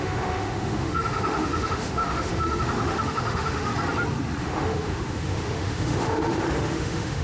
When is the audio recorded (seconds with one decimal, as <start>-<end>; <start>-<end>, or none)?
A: 3.7-4.4